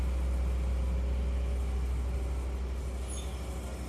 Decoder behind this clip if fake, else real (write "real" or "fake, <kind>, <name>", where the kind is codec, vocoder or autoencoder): real